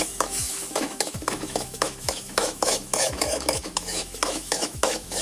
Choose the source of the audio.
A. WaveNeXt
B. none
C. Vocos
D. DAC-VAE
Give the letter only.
D